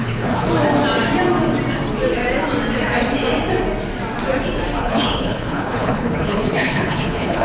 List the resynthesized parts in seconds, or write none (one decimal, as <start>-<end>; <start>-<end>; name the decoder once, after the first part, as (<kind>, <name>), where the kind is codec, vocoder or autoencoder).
0.0-0.5 (codec, HILCodec); 4.8-7.4